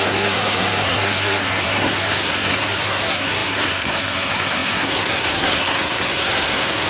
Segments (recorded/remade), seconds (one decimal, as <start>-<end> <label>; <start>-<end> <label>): 0.0-6.9 remade